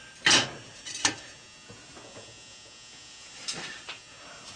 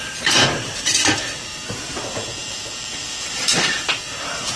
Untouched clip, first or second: first